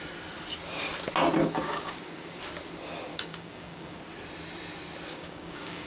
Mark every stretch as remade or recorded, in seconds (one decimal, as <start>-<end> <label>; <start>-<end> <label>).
0.0-1.4 recorded; 1.4-2.4 remade; 2.4-3.1 recorded; 3.1-4.0 remade; 4.0-5.1 recorded; 5.1-5.9 remade